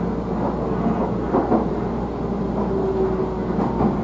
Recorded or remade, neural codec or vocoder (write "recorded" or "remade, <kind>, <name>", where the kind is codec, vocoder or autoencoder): recorded